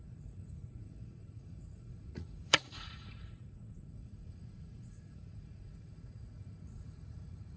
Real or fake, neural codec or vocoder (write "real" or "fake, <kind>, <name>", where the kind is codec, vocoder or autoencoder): fake, vocoder, Vocos